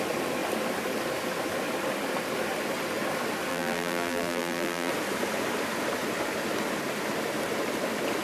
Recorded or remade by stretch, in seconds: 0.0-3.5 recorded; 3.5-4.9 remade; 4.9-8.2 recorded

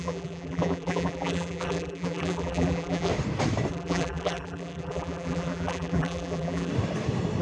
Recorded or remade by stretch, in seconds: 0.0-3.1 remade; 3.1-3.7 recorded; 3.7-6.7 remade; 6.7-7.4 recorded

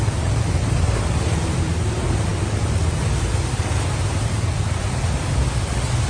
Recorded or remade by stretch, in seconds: 0.0-6.1 recorded

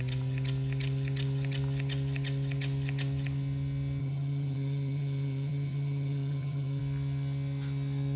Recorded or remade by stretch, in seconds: 0.0-4.0 recorded; 4.0-6.8 remade; 6.8-8.2 recorded

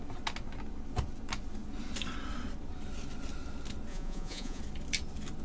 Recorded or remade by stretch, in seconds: 0.0-3.9 recorded; 3.9-4.6 remade; 4.6-5.4 recorded

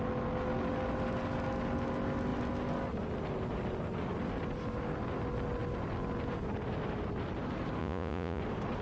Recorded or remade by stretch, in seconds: 0.0-7.8 recorded; 7.8-8.4 remade; 8.4-8.8 recorded

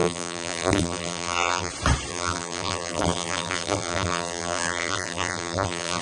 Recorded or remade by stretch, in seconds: 0.0-1.7 remade; 1.7-2.1 recorded; 2.1-6.0 remade

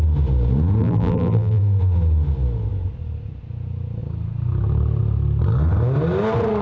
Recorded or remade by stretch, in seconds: 0.0-0.8 recorded; 0.8-1.6 remade; 1.6-6.6 recorded